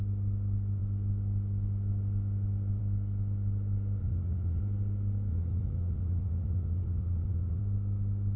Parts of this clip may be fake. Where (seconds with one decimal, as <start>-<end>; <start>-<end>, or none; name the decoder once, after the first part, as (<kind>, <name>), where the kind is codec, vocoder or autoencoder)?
4.0-4.6 (vocoder, Vocos); 5.3-7.6